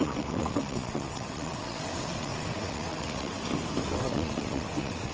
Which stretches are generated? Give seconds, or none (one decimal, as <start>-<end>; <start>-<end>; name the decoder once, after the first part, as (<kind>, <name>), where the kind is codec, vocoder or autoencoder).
0.0-3.4 (vocoder, WaveNeXt); 3.9-5.1